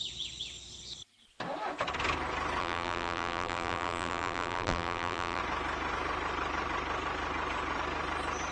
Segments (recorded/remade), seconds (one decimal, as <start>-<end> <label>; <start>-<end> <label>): 0.0-2.6 recorded; 2.6-5.4 remade; 5.4-8.5 recorded